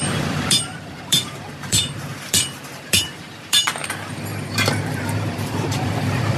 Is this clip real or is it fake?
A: fake